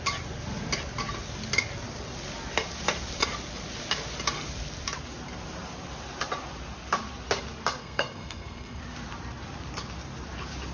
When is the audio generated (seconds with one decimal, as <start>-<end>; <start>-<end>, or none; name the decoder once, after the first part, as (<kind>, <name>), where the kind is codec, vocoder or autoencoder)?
7.8-8.8 (codec, SNAC)